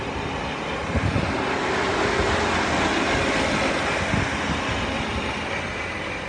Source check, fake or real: real